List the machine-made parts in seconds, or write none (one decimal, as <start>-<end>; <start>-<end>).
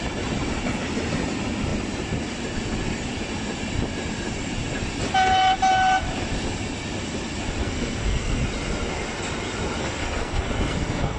7.6-8.4; 9.8-11.2